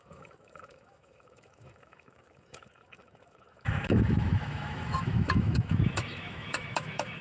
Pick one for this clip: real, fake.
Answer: fake